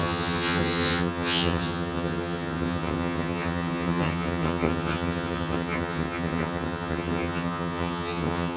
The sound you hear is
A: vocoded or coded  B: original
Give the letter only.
A